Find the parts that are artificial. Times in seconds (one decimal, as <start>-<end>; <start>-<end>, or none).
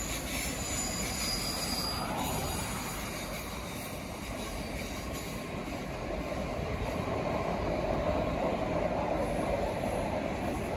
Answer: none